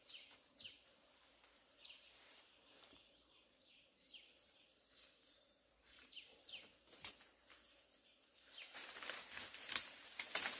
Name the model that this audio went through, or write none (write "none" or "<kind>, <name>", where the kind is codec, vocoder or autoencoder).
vocoder, BigVGAN v2